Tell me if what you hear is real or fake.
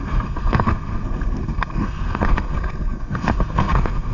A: fake